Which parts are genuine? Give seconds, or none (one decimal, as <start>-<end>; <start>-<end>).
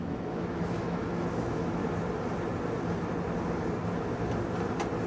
1.8-5.1